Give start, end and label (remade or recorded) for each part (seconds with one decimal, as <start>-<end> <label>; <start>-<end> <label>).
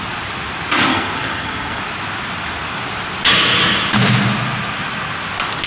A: 0.0-0.9 recorded; 0.9-1.8 remade; 1.8-5.7 recorded